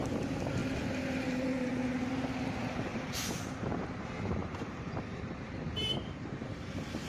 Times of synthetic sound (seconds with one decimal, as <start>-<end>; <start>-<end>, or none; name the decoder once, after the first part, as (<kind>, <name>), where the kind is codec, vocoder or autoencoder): 0.0-0.6 (vocoder, BigVGAN v2); 1.2-1.7; 2.6-7.1